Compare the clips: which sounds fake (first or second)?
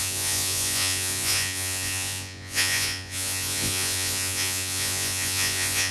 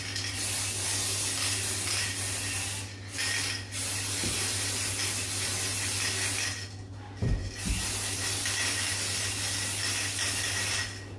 first